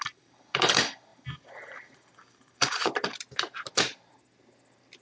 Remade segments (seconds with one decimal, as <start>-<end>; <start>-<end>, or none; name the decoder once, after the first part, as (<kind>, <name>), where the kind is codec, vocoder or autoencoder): none